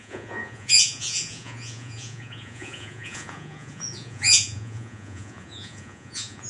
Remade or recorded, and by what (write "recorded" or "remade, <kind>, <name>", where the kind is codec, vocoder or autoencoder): remade, vocoder, Vocos